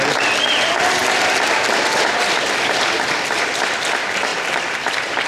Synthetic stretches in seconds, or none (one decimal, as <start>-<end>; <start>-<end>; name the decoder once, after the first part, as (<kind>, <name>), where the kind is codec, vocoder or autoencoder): 1.0-2.8 (vocoder, BigVGAN v2); 4.3-5.3